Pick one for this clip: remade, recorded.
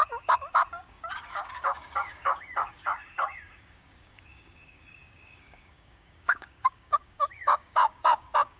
remade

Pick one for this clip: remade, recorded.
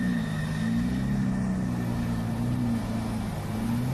recorded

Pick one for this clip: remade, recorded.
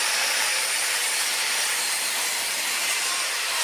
remade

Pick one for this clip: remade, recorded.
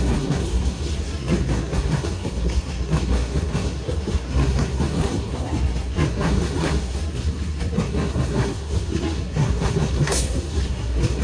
remade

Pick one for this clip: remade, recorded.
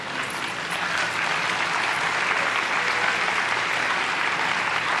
recorded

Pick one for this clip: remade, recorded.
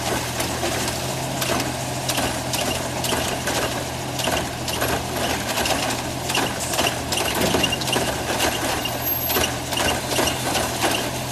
recorded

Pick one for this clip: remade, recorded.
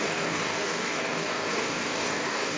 remade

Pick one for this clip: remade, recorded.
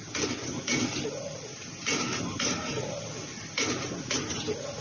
recorded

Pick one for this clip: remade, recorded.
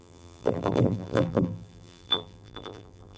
remade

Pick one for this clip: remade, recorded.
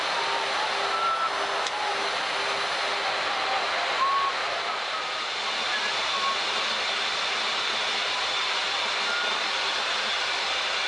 recorded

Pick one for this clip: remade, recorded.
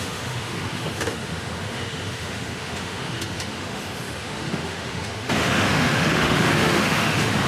remade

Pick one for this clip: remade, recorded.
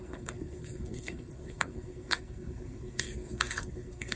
remade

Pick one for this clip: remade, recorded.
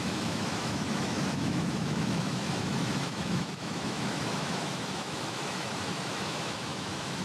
remade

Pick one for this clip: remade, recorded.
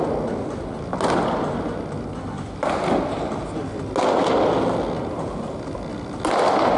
recorded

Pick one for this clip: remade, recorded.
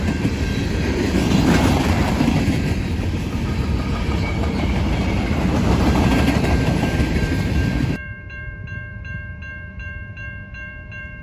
remade